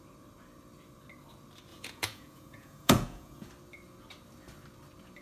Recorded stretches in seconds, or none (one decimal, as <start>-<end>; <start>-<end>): 0.0-1.7; 3.5-5.2